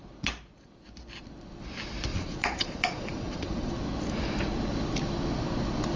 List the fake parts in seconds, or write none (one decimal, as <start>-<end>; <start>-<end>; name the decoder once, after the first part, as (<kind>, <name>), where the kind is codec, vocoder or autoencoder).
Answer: 2.1-3.7 (vocoder, Vocos)